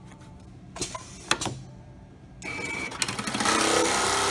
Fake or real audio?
real